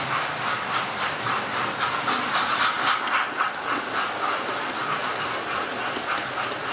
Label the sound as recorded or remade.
recorded